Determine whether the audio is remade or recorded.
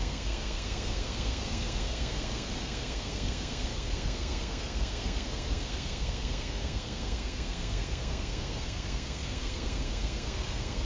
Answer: remade